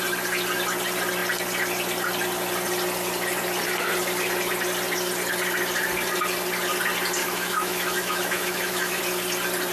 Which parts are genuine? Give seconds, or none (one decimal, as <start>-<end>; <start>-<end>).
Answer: 0.0-7.2; 9.0-9.7